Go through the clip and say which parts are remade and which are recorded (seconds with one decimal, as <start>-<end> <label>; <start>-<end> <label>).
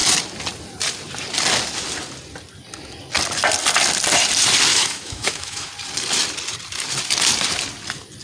0.0-4.7 recorded; 4.7-5.7 remade; 5.7-8.2 recorded